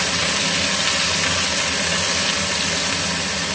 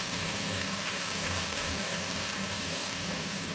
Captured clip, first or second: first